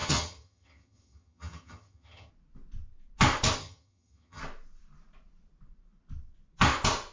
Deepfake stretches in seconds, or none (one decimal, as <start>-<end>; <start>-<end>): 0.0-2.3; 3.6-4.4